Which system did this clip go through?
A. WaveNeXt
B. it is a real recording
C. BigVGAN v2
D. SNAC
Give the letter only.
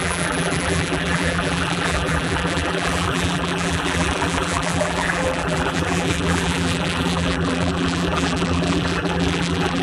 C